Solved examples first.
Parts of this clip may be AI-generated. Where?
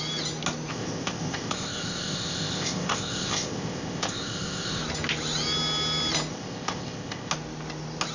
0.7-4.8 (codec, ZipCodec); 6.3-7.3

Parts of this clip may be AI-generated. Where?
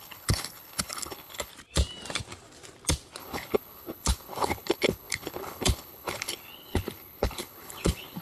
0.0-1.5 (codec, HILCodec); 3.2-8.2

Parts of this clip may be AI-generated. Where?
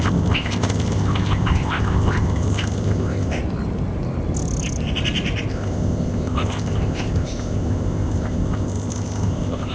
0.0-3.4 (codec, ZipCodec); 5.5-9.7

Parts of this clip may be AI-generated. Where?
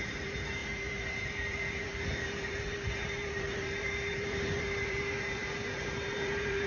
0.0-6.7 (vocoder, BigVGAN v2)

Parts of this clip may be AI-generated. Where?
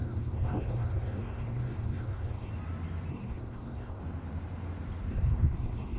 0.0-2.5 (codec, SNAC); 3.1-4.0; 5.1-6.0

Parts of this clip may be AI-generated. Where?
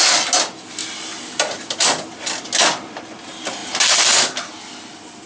none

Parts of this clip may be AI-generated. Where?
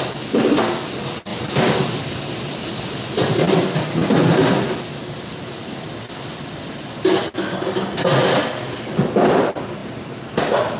none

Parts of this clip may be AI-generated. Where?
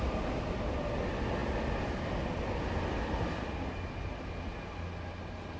none